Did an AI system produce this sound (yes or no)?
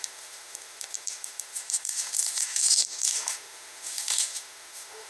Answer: yes